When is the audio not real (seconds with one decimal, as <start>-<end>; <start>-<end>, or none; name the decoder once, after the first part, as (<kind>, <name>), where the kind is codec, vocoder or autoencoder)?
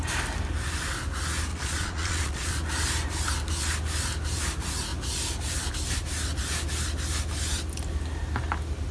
1.5-2.5 (vocoder, Vocos)